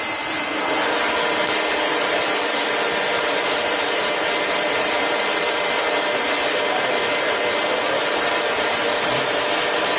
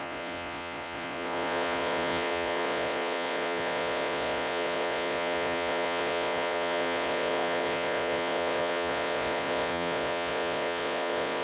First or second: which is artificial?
second